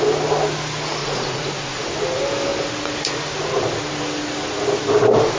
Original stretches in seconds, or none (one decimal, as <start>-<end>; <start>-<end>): 0.0-1.0; 1.9-5.4